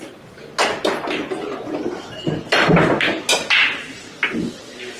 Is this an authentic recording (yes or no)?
yes